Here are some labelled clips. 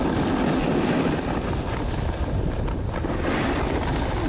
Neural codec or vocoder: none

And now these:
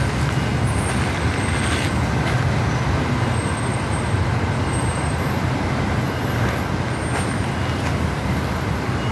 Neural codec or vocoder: none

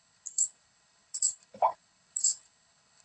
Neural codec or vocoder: codec, HILCodec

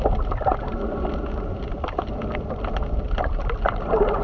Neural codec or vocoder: none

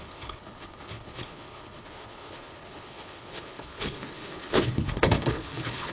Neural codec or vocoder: codec, HILCodec